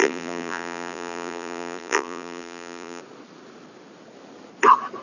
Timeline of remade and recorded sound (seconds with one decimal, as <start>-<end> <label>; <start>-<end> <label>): 0.0-3.0 remade; 3.0-5.0 recorded